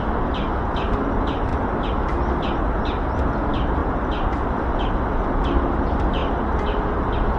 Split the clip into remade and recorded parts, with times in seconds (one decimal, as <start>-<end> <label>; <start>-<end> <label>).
0.0-7.4 recorded